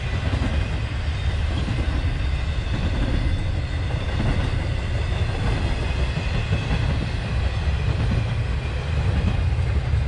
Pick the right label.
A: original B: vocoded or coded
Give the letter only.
A